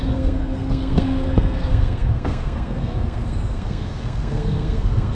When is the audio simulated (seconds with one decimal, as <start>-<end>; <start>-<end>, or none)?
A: 0.0-5.1

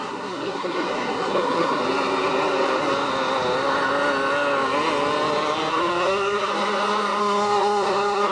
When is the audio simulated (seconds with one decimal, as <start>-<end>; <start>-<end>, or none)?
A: 0.0-1.8; 5.7-6.5; 7.2-8.3

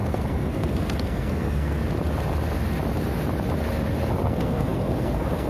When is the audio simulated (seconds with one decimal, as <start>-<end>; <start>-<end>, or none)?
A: 0.0-1.8; 4.1-5.5

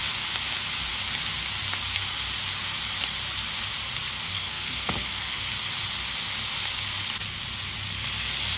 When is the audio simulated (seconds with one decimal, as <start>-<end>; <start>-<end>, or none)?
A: 4.3-5.4

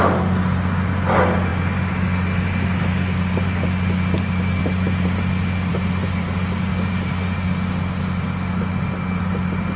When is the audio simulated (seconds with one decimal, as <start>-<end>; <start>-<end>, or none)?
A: none

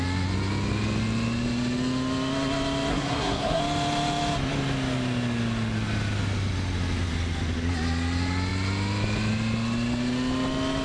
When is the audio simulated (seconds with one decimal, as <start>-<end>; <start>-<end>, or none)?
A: 2.9-3.6

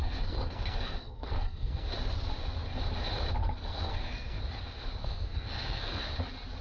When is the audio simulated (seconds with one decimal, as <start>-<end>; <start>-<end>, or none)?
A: 0.0-1.9; 3.4-4.4; 5.0-6.0